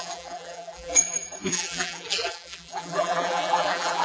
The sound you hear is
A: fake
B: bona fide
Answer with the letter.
A